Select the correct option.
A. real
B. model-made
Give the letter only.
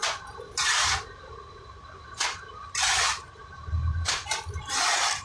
B